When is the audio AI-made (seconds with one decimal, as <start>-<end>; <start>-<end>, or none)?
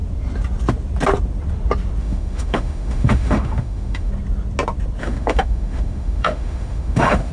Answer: 2.0-4.1; 5.0-7.3